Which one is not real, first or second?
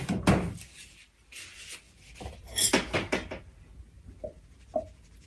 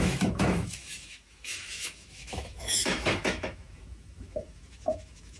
second